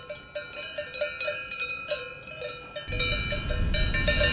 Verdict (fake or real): real